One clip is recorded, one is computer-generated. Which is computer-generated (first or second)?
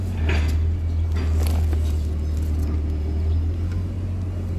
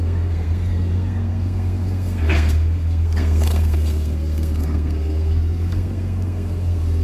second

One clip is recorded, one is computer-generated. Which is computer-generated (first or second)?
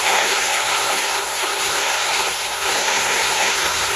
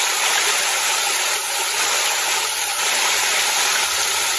first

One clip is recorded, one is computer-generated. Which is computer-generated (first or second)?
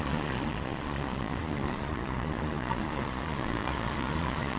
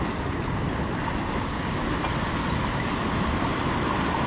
first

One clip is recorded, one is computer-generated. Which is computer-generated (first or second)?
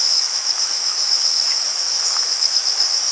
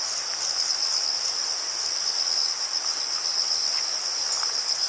first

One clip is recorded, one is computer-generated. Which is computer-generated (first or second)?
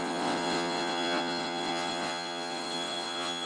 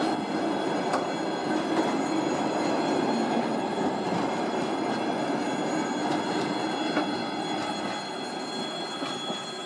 first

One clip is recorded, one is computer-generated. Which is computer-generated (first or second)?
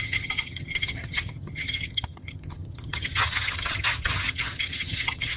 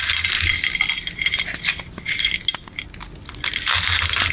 first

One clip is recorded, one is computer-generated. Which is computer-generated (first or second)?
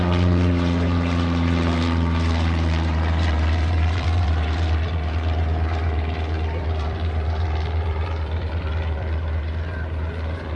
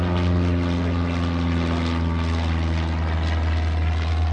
first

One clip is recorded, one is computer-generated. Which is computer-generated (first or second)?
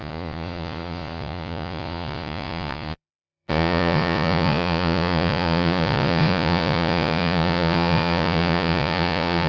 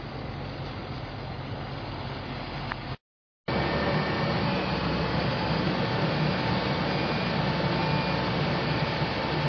first